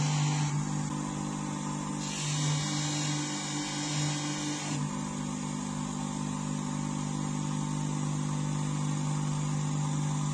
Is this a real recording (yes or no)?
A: yes